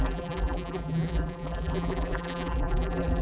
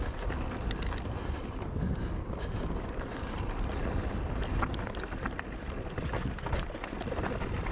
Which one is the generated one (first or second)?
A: first